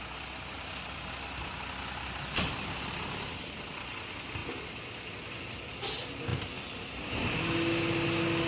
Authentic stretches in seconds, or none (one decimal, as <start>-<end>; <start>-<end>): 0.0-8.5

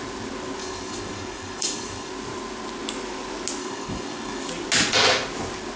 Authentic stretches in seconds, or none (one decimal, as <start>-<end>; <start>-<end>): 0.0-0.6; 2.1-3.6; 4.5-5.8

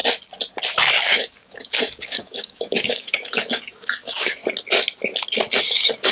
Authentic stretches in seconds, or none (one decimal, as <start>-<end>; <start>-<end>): 0.0-0.9; 4.4-5.6